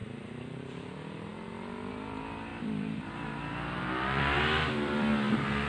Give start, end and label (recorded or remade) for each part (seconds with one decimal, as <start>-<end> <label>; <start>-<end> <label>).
0.0-1.3 remade; 1.3-1.9 recorded; 1.9-5.7 remade